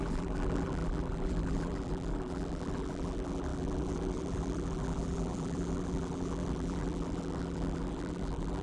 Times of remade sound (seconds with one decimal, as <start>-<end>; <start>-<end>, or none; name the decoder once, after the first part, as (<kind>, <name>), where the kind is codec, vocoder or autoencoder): 0.0-8.6 (vocoder, BigVGAN v2)